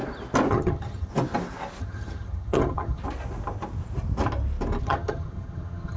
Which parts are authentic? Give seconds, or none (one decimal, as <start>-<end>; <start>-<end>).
0.0-0.5; 1.1-1.8; 3.0-4.8